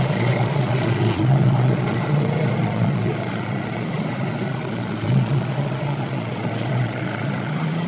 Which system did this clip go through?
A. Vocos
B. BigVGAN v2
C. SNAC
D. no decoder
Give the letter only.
A